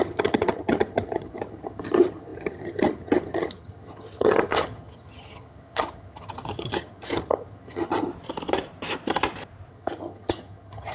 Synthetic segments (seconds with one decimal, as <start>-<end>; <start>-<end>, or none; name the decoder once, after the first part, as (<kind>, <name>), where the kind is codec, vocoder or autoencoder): 0.0-8.1 (vocoder, HiFi-GAN); 9.7-10.9